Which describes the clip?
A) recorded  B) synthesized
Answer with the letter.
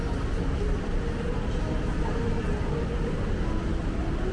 A